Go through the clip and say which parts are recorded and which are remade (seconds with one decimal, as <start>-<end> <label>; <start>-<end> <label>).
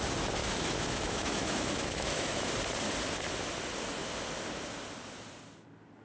0.0-0.4 recorded; 0.4-2.5 remade; 2.5-6.0 recorded